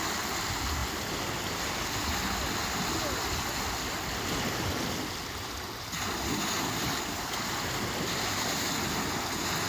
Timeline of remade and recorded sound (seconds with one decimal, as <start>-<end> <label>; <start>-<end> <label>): 0.0-6.4 recorded; 6.4-7.2 remade; 7.2-9.7 recorded